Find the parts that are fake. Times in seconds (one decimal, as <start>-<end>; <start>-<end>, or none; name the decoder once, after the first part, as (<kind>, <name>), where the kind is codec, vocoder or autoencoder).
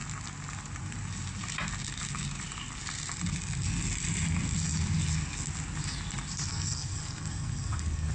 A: 6.5-8.1 (codec, SNAC)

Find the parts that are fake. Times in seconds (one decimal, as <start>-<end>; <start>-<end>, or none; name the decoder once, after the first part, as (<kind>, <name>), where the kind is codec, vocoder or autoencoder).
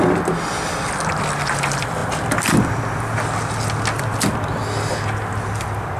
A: none